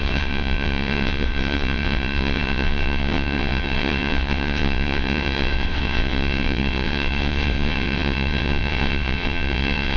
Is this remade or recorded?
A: remade